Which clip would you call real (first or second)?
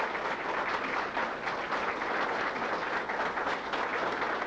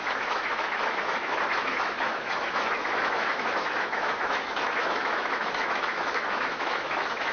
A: first